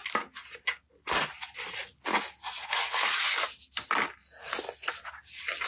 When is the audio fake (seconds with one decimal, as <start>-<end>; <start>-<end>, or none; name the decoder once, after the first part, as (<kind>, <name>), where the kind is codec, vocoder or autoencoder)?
none